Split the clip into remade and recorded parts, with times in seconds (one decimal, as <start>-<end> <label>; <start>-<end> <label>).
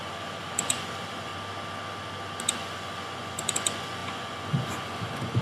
0.0-1.3 remade; 1.3-2.4 recorded; 2.4-5.4 remade